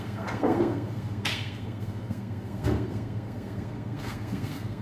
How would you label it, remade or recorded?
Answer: remade